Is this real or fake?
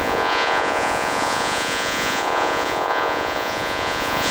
fake